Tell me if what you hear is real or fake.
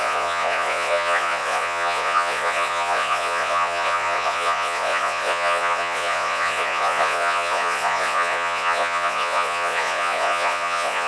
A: fake